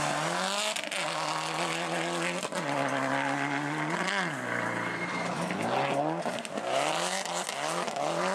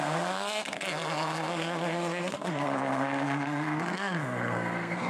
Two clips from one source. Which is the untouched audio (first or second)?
first